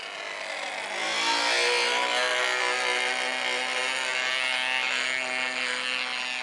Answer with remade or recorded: recorded